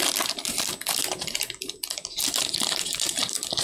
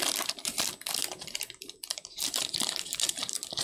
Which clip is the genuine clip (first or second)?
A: first